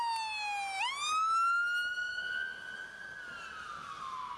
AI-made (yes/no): no